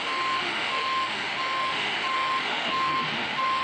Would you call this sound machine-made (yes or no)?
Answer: yes